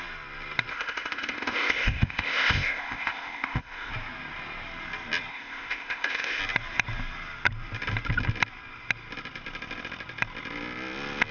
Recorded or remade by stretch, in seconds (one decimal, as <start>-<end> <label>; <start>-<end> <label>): 0.0-0.7 recorded; 0.7-3.9 remade; 3.9-5.3 recorded; 5.3-6.4 remade; 6.4-11.3 recorded